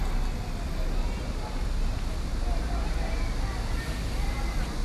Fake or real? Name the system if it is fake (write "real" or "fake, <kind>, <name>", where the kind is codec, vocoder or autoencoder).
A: real